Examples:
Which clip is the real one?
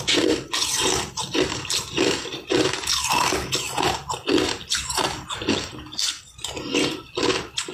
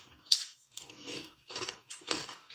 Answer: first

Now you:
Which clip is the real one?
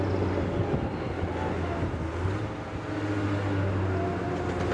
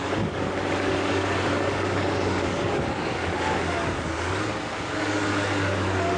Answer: first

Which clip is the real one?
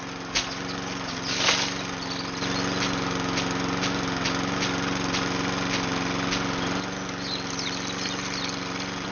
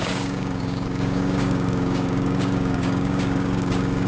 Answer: first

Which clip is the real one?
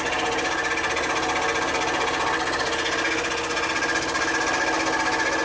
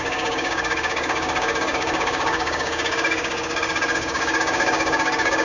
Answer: first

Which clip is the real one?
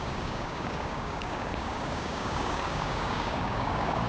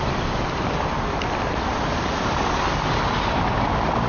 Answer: second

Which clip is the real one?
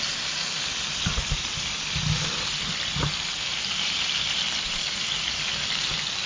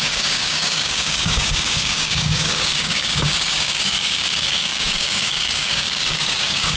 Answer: first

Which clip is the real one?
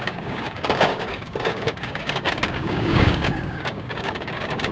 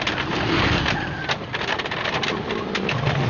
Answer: second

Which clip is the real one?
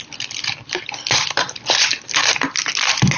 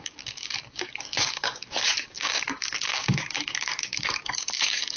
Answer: first